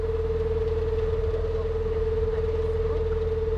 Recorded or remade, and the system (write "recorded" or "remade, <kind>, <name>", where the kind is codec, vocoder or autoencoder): recorded